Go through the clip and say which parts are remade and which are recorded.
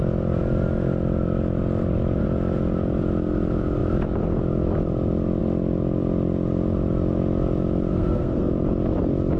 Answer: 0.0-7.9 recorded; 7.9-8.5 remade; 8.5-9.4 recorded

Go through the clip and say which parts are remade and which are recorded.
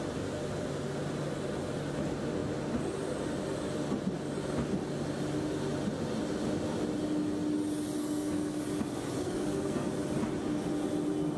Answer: 0.0-8.0 recorded; 8.0-8.6 remade; 8.6-9.2 recorded; 9.2-9.9 remade; 9.9-11.4 recorded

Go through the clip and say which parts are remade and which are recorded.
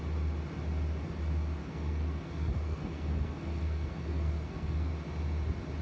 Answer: 0.0-1.6 recorded; 1.6-4.9 remade; 4.9-5.8 recorded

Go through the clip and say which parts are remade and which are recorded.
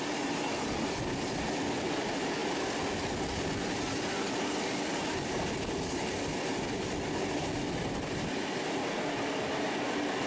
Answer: 0.0-8.8 recorded; 8.8-9.6 remade; 9.6-10.3 recorded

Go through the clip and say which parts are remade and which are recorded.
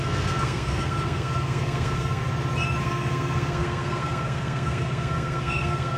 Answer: 0.0-2.2 remade; 2.2-2.8 recorded; 2.8-6.0 remade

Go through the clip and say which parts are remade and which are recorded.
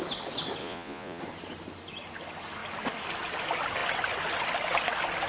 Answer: 0.0-0.6 recorded; 0.6-1.2 remade; 1.2-5.3 recorded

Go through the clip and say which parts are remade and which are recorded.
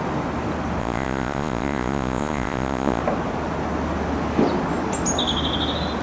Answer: 0.0-0.8 recorded; 0.8-3.0 remade; 3.0-6.0 recorded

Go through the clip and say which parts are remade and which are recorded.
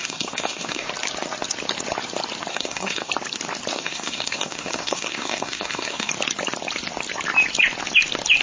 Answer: 0.0-0.9 remade; 0.9-2.5 recorded; 2.5-3.1 remade; 3.1-3.7 recorded; 3.7-6.1 remade; 6.1-8.4 recorded